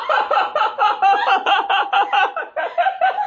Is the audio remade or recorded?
recorded